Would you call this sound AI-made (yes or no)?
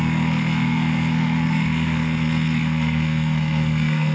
yes